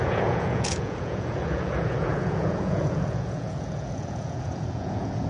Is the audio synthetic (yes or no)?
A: yes